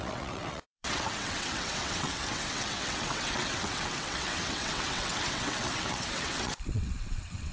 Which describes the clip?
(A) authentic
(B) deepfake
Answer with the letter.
B